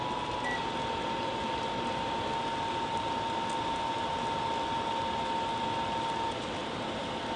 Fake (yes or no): no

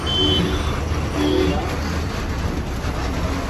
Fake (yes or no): no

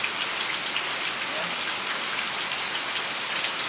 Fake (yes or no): no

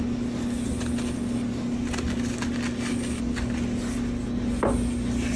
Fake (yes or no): no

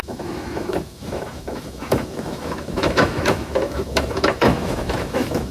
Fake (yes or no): yes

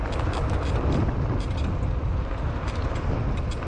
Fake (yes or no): no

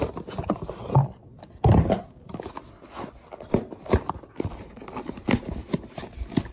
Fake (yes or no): no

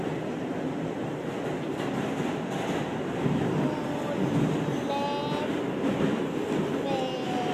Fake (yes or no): no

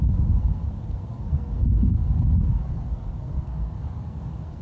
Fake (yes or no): yes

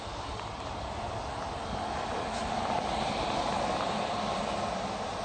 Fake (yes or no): no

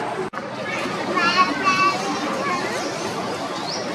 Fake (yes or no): no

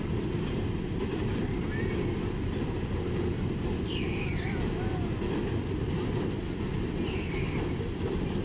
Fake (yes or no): no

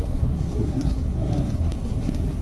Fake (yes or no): yes